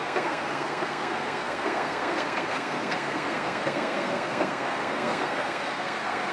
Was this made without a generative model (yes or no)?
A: no